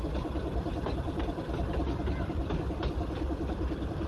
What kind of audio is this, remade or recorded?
recorded